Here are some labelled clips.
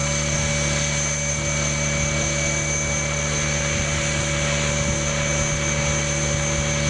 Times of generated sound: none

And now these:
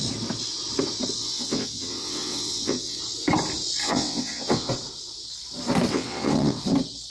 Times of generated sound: 1.2-3.0 (vocoder, WaveNeXt); 3.8-4.7; 5.9-6.6